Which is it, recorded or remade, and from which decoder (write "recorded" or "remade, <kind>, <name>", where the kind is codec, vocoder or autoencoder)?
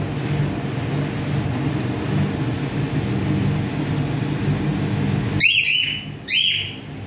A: recorded